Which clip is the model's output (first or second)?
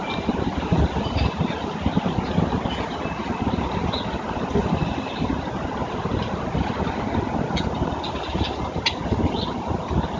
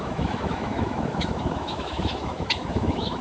second